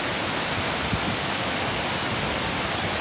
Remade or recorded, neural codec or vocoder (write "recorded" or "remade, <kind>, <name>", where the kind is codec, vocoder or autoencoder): recorded